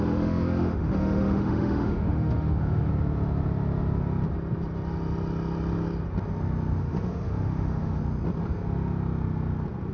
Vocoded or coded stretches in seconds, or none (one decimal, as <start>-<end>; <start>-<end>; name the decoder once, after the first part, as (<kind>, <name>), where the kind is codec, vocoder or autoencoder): 0.0-2.9 (autoencoder, DAC-VAE); 6.8-8.0